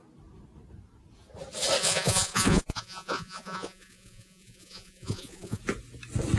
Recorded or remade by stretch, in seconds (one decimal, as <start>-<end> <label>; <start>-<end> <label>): 0.0-1.8 recorded; 1.8-5.6 remade; 5.6-6.4 recorded